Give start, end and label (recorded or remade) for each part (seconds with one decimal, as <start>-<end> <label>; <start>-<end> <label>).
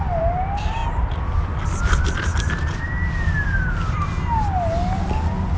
0.0-5.6 recorded